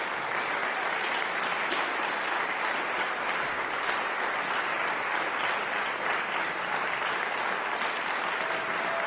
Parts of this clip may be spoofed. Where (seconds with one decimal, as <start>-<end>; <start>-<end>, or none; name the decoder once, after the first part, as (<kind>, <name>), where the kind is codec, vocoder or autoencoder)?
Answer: none

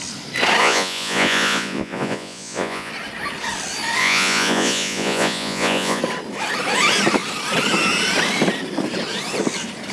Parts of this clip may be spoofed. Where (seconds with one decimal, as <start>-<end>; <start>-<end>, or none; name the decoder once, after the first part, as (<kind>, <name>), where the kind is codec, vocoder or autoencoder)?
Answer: 0.6-2.9 (vocoder, Vocos); 4.0-6.0

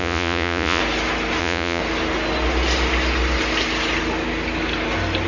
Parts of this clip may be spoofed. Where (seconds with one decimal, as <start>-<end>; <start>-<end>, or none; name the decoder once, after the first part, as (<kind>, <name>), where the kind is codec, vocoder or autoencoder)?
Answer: 0.0-0.8 (vocoder, Vocos); 1.4-1.8

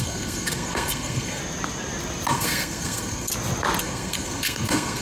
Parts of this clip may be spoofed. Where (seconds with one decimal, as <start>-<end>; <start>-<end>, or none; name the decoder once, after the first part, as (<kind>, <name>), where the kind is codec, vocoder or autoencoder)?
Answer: 0.0-1.4 (codec, SNAC); 2.3-3.3; 3.8-5.0

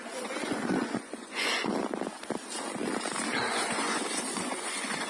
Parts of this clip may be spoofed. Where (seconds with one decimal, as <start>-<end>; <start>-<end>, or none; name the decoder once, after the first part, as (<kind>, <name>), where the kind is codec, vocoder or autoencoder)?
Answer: 0.0-1.7 (vocoder, Vocos); 3.5-5.1

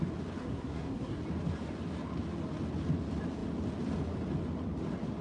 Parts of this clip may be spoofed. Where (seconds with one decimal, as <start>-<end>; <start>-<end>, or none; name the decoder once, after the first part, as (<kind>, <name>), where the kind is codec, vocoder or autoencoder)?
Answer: 0.4-1.2 (codec, SNAC)

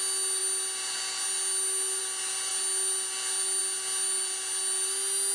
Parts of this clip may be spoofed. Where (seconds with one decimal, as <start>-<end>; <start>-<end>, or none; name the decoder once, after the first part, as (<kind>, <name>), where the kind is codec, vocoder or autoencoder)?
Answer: none